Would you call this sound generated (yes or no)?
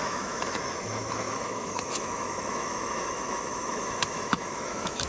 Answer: yes